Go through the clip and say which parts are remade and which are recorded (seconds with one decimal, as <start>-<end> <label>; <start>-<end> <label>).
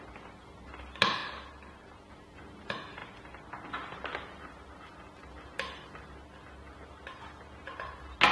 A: 0.0-8.3 recorded